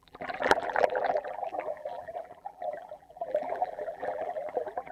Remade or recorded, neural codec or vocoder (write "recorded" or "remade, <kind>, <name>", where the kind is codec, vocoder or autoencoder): remade, vocoder, BigVGAN v2